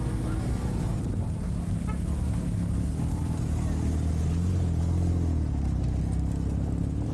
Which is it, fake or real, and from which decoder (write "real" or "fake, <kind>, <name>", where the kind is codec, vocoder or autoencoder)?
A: real